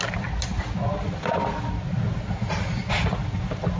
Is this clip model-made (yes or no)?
no